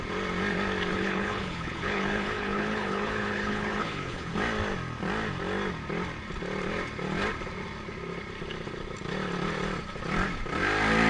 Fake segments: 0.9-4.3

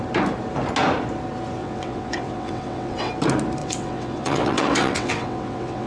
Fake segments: 1.6-3.1; 3.6-5.9

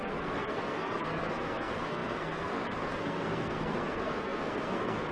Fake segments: 0.0-5.1

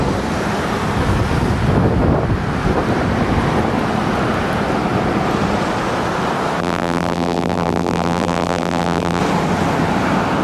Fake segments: 6.6-9.2